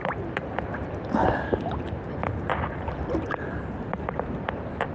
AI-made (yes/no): yes